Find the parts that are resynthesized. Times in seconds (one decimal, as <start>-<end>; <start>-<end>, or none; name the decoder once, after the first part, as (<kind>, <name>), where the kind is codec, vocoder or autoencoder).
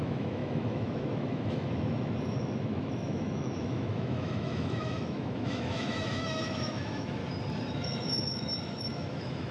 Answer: 0.0-7.2 (autoencoder, DAC-VAE); 7.7-9.5